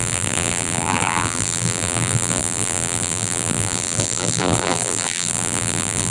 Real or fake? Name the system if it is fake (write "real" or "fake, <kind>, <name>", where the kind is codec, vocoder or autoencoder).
fake, vocoder, BigVGAN v2